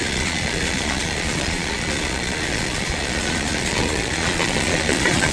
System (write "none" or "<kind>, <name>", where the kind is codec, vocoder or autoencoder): vocoder, Vocos